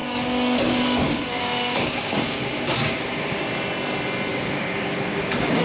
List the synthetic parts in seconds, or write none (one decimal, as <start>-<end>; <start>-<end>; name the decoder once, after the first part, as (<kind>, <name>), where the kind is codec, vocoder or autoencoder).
0.0-3.4 (codec, DAC); 4.3-5.6